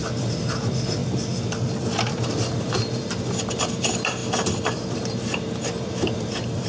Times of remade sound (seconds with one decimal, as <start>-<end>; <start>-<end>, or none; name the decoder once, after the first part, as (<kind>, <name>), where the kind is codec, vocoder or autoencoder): 0.0-1.0 (vocoder, BigVGAN v2); 2.1-6.7